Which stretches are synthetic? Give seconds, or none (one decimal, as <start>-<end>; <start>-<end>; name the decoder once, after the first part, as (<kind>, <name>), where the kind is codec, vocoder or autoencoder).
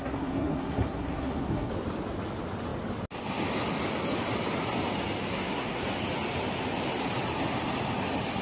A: 0.0-1.7 (codec, SNAC); 5.3-5.8